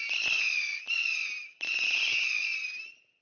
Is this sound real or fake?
real